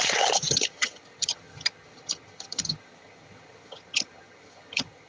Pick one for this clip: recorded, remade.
remade